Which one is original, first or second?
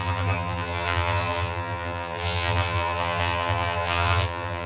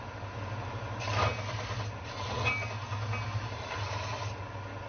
second